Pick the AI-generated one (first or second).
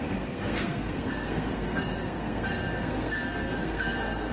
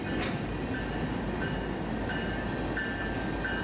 first